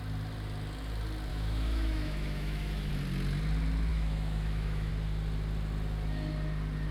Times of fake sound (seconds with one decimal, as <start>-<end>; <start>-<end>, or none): 1.3-2.9; 3.9-4.9